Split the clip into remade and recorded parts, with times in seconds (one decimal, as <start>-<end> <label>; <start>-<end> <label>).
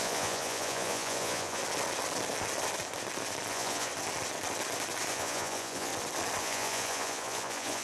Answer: 0.0-1.6 remade; 1.6-3.5 recorded; 3.5-3.9 remade; 3.9-5.1 recorded; 5.1-5.9 remade; 5.9-6.4 recorded; 6.4-7.8 remade